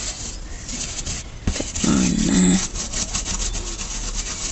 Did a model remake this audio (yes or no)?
no